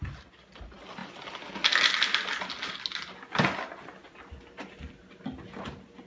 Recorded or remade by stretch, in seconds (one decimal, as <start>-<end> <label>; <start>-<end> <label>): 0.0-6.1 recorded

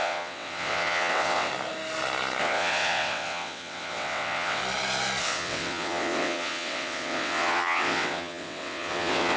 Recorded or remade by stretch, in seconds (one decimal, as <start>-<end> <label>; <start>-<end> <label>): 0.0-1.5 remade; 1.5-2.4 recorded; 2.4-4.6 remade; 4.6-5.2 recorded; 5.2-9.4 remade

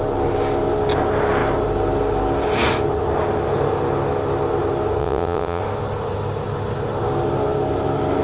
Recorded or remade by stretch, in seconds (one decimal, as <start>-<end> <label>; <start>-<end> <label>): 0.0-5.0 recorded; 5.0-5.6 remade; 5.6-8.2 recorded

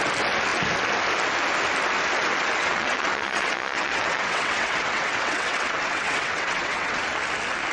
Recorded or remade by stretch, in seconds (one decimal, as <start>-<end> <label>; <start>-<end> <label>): 0.0-2.6 recorded; 2.6-7.0 remade; 7.0-7.7 recorded

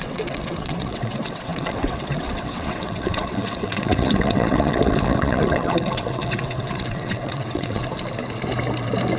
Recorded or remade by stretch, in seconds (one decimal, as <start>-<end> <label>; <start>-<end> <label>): 0.0-7.8 remade; 7.8-9.2 recorded